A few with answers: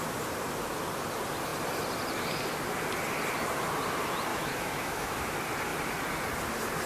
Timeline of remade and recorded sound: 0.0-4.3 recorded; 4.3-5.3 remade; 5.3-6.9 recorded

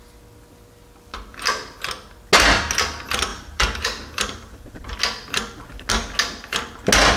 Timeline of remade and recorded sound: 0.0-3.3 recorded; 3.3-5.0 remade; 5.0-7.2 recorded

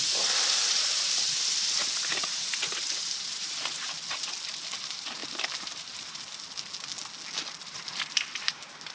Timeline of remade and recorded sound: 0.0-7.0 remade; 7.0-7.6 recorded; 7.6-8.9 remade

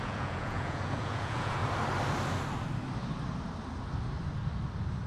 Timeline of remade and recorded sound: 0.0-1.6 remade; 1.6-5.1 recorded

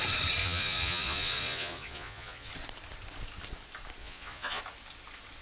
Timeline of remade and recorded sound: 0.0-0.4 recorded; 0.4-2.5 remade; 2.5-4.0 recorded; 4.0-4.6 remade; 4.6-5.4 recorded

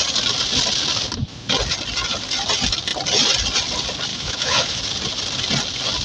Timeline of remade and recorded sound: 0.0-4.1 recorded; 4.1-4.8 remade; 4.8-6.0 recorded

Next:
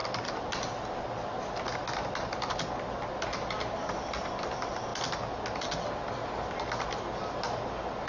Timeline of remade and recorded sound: 0.0-8.1 recorded